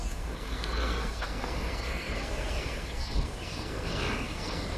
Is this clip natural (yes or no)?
no